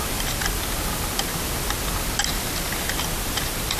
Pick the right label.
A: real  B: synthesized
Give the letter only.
A